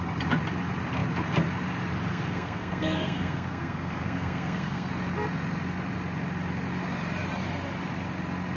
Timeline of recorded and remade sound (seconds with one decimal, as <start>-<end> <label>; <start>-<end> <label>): 0.0-2.1 recorded; 2.1-4.9 remade; 4.9-8.6 recorded